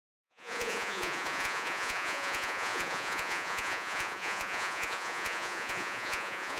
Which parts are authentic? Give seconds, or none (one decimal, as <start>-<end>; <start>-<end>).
none

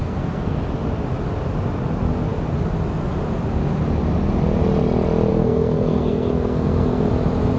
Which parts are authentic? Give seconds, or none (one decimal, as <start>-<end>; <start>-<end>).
0.6-5.3; 7.1-7.6

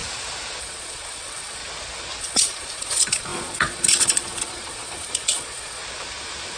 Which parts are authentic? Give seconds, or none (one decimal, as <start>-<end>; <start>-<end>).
0.0-0.6; 1.6-2.2; 5.8-6.6